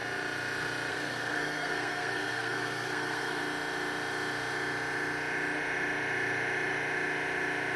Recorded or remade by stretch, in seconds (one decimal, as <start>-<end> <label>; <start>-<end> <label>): 0.0-0.9 recorded; 0.9-3.4 remade; 3.4-7.8 recorded

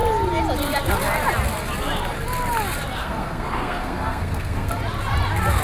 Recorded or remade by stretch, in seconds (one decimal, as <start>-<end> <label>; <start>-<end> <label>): 0.0-3.0 recorded; 3.0-4.7 remade; 4.7-5.6 recorded

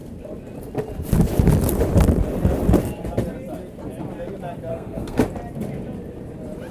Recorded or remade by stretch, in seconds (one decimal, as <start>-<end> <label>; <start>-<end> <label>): 0.0-4.7 recorded; 4.7-5.2 remade; 5.2-6.7 recorded

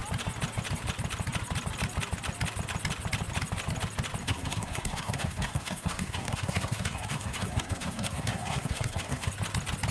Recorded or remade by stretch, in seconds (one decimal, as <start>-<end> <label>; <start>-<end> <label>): 0.0-4.2 recorded; 4.2-9.3 remade; 9.3-9.9 recorded

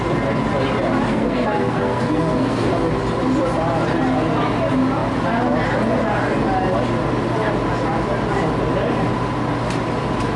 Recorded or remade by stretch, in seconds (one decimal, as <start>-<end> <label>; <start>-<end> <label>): 0.0-1.1 recorded; 1.1-2.7 remade; 2.7-10.4 recorded

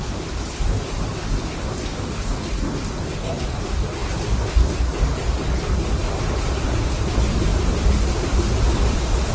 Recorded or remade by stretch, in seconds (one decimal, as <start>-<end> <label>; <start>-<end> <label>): 0.0-9.3 recorded